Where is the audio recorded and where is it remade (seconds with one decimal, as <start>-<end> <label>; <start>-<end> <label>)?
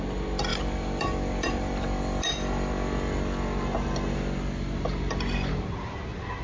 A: 0.0-0.5 recorded; 0.5-2.7 remade; 2.7-6.4 recorded